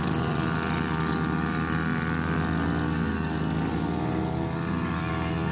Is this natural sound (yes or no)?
yes